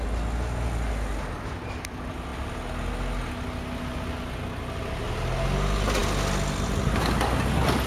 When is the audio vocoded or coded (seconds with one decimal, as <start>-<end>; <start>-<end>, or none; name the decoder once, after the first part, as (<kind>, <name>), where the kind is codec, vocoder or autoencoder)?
none

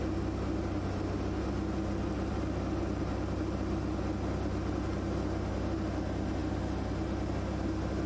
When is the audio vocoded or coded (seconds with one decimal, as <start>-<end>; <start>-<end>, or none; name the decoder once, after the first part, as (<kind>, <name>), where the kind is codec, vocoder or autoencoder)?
none

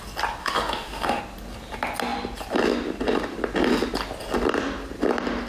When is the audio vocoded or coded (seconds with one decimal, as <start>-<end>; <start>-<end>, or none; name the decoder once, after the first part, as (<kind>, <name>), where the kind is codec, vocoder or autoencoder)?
0.4-1.2 (autoencoder, DAC-VAE)

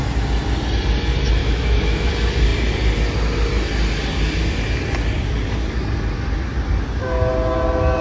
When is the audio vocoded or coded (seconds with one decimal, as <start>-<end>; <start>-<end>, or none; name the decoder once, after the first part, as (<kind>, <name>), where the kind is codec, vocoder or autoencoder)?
1.4-2.1 (autoencoder, DAC-VAE)

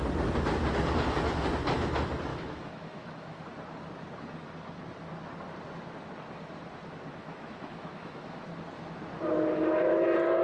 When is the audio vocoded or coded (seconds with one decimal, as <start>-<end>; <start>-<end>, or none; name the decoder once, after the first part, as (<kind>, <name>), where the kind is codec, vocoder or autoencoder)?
2.3-3.4 (autoencoder, DAC-VAE); 7.2-8.4

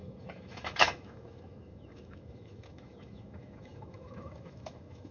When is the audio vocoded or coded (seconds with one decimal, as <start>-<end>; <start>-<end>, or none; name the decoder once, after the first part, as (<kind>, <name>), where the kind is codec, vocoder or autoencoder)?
0.0-5.1 (autoencoder, DAC-VAE)

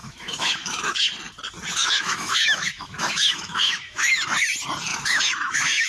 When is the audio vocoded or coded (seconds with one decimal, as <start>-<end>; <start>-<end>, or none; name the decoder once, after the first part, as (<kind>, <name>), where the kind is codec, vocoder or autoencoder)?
0.0-1.1 (autoencoder, DAC-VAE); 1.8-4.3; 4.9-5.9

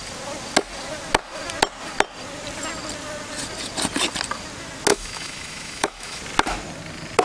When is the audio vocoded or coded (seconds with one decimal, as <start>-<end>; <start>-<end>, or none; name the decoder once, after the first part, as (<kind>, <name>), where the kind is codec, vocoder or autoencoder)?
4.9-6.2 (autoencoder, DAC-VAE)